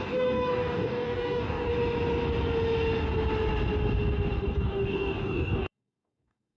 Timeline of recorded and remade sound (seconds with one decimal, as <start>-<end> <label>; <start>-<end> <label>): 0.0-1.7 remade; 1.7-4.5 recorded; 4.5-6.6 remade